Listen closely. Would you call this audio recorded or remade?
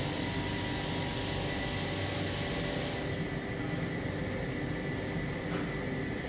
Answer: recorded